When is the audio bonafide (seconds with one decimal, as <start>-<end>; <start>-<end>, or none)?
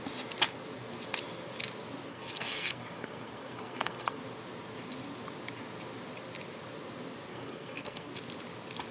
0.0-2.1; 4.2-7.3; 8.1-8.9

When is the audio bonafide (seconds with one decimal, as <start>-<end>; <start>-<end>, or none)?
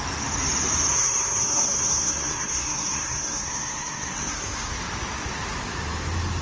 0.0-0.9; 4.7-6.4